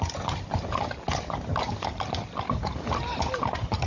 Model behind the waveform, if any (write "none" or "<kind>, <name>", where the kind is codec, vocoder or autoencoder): none